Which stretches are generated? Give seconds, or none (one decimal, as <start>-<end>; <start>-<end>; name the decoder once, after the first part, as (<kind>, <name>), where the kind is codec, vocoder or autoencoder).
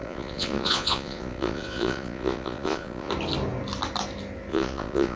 0.0-3.1 (vocoder, Vocos); 4.5-5.2